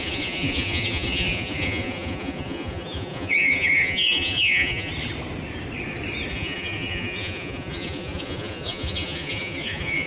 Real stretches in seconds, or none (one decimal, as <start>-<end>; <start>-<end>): 4.9-6.3